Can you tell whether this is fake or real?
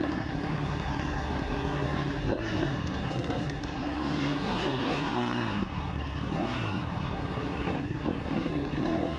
fake